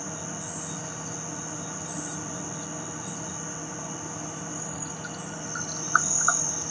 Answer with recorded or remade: recorded